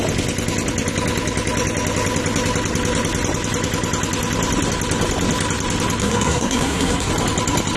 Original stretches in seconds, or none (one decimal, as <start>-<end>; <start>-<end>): 0.0-6.0; 7.1-7.8